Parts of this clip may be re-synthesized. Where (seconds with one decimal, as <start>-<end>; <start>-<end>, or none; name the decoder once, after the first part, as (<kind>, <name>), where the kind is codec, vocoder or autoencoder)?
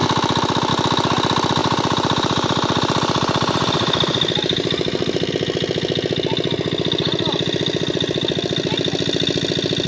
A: 1.6-5.3 (vocoder, BigVGAN v2)